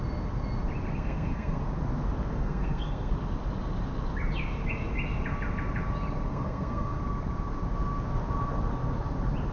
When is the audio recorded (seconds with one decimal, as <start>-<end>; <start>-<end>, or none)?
0.0-0.9; 1.6-2.3; 3.1-6.3; 7.0-9.5